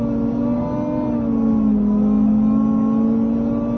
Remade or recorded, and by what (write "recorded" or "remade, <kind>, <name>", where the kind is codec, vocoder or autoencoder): recorded